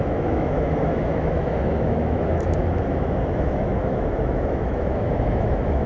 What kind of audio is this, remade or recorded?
remade